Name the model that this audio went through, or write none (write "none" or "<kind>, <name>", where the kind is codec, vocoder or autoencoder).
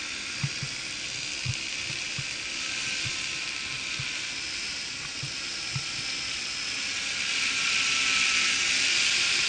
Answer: none